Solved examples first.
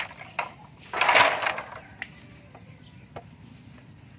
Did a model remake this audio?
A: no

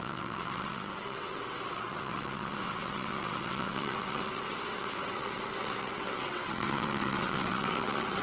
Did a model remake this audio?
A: yes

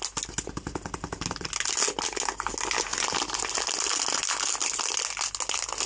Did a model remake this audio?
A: no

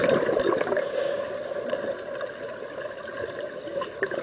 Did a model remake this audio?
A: no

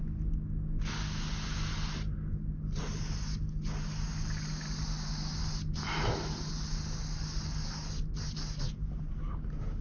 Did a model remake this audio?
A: no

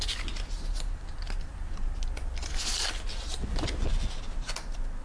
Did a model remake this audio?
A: no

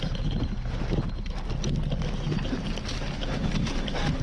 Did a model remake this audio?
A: no